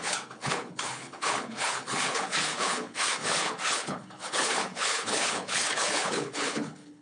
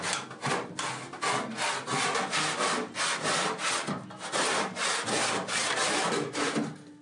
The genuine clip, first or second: second